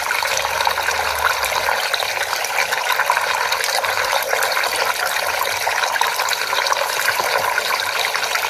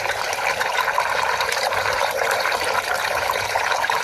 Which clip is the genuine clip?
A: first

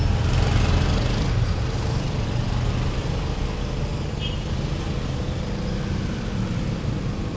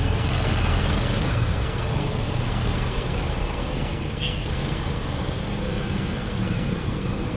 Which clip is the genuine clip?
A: first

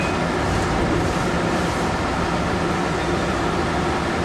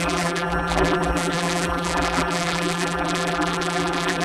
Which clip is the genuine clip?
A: first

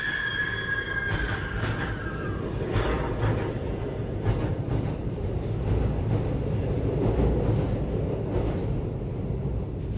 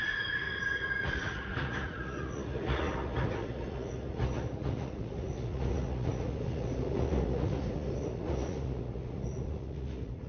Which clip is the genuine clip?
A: first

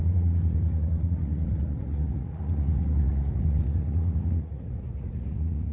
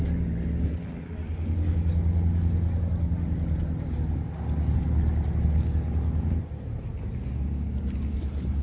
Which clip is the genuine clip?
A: second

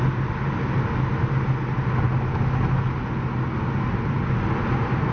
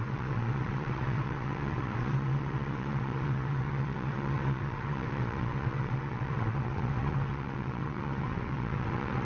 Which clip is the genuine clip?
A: first